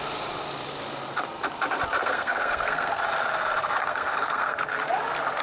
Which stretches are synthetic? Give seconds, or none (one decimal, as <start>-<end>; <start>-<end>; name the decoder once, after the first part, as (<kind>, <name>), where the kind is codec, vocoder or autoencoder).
2.0-3.0 (codec, SNAC); 3.8-4.6